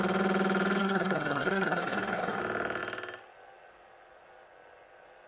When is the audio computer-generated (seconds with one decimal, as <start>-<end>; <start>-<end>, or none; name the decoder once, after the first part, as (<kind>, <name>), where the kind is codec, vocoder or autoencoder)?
0.8-2.4 (codec, SNAC)